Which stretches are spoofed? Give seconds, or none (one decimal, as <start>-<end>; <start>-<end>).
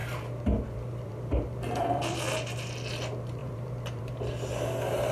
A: 0.0-2.2; 3.4-4.1